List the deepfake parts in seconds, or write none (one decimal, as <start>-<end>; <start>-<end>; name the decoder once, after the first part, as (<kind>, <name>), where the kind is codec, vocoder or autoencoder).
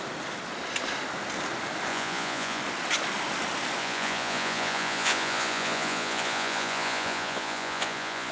1.9-2.6 (vocoder, Vocos); 3.8-8.3